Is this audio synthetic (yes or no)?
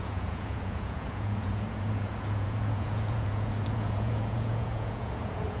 yes